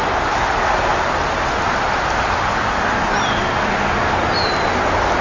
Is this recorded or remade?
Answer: recorded